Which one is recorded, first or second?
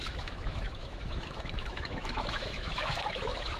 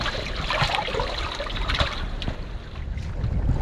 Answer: second